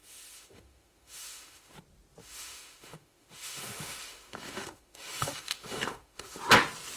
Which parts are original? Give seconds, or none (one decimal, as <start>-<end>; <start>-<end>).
1.8-2.2; 6.4-7.0